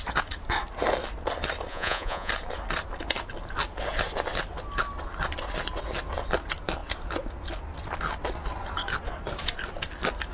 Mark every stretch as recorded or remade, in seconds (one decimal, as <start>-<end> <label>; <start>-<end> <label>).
0.0-1.7 recorded; 1.7-2.3 remade; 2.3-10.3 recorded